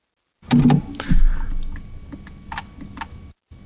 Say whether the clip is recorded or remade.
recorded